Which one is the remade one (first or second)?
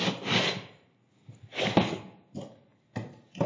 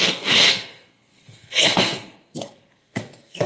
second